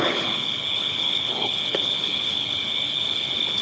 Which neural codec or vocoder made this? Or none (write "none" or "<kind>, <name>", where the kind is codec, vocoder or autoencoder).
codec, HILCodec